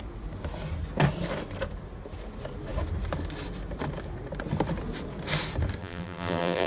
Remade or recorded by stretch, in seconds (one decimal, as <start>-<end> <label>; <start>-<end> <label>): 0.0-5.8 recorded; 5.8-6.7 remade

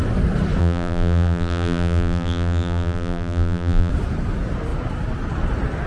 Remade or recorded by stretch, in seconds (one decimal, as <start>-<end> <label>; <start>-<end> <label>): 0.0-0.6 recorded; 0.6-3.9 remade; 3.9-5.9 recorded

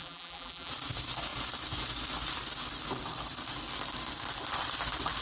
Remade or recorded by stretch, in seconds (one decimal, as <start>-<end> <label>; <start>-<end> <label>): 0.0-0.7 remade; 0.7-5.2 recorded